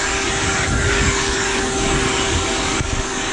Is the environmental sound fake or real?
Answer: fake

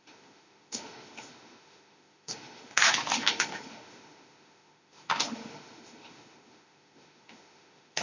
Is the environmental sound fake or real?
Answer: fake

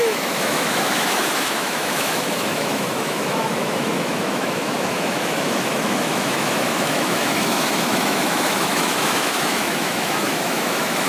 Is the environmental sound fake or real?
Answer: fake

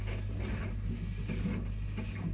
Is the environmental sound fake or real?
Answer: real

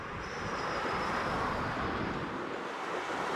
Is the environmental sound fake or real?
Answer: fake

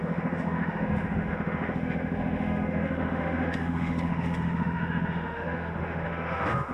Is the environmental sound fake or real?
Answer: fake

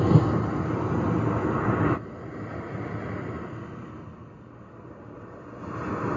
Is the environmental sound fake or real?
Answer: real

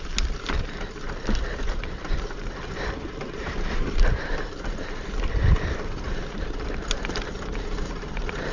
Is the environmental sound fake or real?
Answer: real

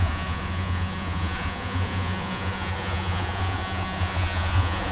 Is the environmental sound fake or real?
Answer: fake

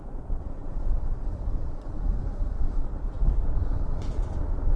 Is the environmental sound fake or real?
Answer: fake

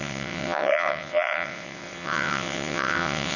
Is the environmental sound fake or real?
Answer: fake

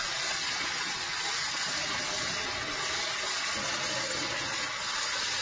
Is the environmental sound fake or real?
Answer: real